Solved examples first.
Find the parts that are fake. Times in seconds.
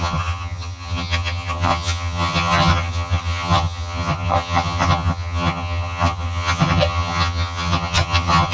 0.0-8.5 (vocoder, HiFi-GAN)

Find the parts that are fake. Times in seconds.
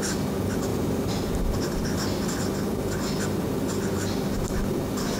0.7-1.4 (vocoder, BigVGAN v2)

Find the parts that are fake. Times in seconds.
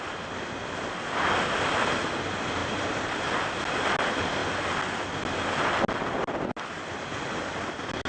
2.6-3.2 (vocoder, BigVGAN v2)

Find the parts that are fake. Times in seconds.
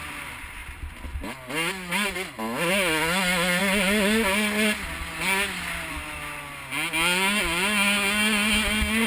none